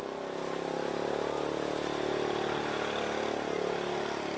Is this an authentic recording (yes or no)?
yes